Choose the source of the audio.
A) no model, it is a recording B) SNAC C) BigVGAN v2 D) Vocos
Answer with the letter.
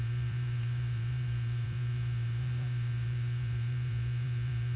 C